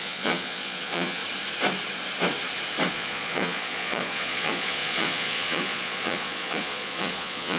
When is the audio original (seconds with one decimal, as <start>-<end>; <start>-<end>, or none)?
1.2-2.9